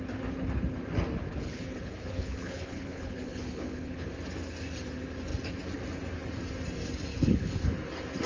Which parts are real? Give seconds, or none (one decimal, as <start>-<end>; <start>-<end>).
0.0-1.3; 4.1-7.1; 7.7-8.3